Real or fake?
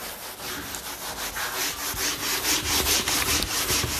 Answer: real